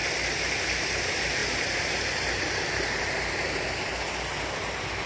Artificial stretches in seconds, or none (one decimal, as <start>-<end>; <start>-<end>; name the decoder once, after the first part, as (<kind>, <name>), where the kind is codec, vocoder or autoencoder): 1.4-3.0 (vocoder, BigVGAN v2)